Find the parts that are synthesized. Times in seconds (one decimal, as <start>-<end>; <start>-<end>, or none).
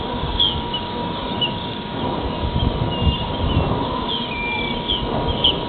none